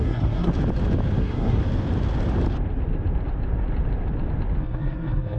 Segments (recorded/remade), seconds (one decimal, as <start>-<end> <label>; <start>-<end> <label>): 0.0-0.5 remade; 0.5-1.2 recorded; 1.2-1.6 remade; 1.6-4.6 recorded; 4.6-5.4 remade